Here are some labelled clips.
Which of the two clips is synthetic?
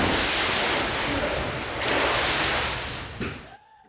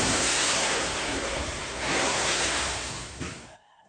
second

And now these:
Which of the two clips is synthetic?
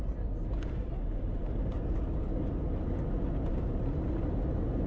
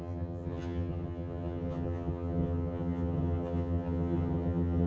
second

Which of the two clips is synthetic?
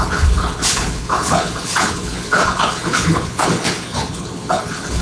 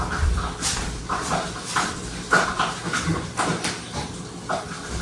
first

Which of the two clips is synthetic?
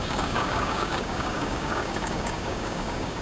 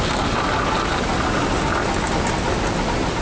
first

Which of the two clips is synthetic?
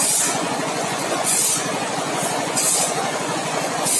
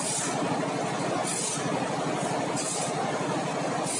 first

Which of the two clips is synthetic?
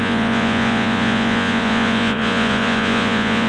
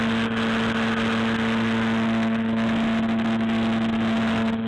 first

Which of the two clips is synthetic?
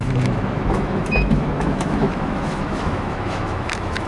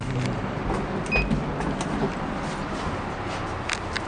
first